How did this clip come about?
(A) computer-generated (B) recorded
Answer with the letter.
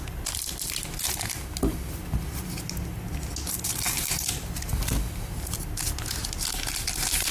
B